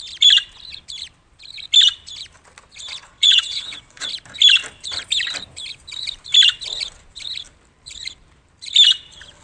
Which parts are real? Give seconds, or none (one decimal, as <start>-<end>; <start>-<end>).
0.0-3.0; 4.1-9.4